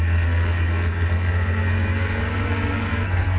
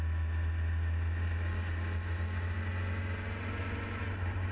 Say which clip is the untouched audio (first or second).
second